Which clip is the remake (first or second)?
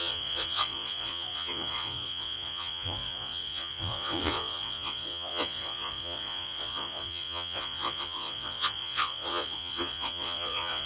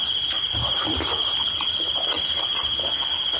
first